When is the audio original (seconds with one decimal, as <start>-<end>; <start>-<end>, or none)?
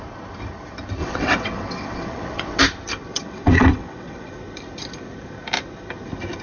0.0-1.0; 2.6-3.1; 4.3-6.4